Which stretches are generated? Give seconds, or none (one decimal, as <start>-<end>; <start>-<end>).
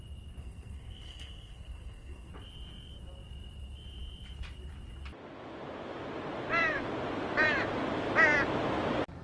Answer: 0.4-2.3